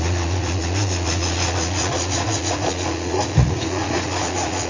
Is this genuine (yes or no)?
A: no